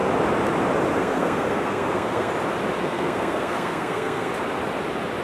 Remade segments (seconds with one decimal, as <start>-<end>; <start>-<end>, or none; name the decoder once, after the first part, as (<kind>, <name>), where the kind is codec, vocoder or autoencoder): 1.0-2.3 (codec, SNAC); 2.8-4.3